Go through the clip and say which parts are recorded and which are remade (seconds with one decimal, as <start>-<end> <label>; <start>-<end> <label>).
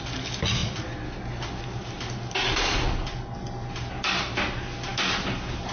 0.0-5.7 recorded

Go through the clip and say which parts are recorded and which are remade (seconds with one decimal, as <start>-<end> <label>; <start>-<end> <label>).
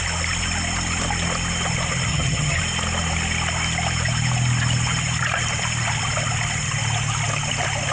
0.0-2.1 recorded; 2.1-2.6 remade; 2.6-7.9 recorded